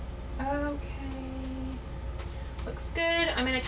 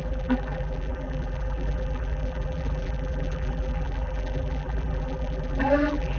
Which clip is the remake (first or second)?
second